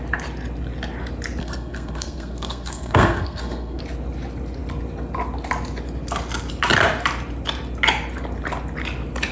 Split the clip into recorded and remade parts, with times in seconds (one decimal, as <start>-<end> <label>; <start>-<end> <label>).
0.0-1.4 recorded; 1.4-3.8 remade; 3.8-9.3 recorded

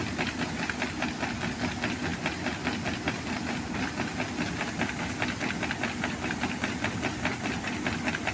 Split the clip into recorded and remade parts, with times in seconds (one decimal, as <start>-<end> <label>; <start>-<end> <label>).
0.0-8.3 recorded

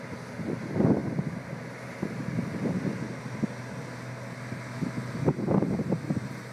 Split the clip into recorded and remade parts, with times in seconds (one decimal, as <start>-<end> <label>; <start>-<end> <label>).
0.0-6.5 recorded

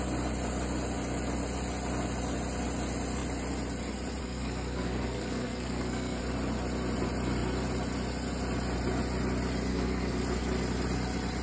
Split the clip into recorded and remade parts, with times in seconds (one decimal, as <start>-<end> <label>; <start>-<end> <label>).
0.0-4.2 recorded; 4.2-6.2 remade; 6.2-9.7 recorded; 9.7-10.2 remade; 10.2-11.4 recorded

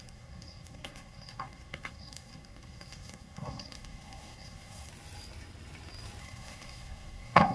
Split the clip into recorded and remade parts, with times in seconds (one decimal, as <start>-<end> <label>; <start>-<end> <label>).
0.0-4.9 remade; 4.9-6.2 recorded; 6.2-7.5 remade

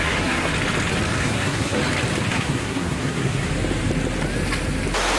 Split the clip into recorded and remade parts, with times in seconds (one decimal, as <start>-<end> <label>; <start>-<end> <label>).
0.0-0.5 remade; 0.5-1.2 recorded; 1.2-1.8 remade; 1.8-2.3 recorded; 2.3-3.5 remade; 3.5-5.2 recorded

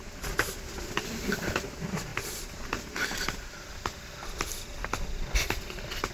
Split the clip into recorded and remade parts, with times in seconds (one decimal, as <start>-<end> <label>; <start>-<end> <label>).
0.0-6.1 recorded